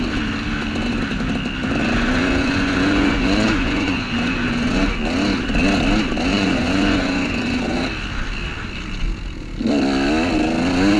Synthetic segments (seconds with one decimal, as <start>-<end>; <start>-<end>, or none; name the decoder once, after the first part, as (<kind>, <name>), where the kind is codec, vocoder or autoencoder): 1.8-4.8 (vocoder, Vocos); 6.3-7.8